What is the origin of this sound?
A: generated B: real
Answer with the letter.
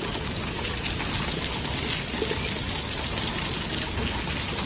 B